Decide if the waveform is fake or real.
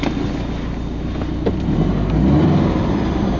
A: real